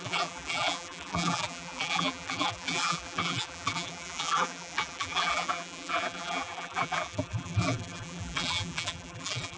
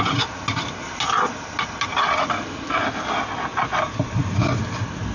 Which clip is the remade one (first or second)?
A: first